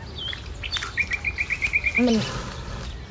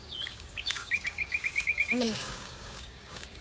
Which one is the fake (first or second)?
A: second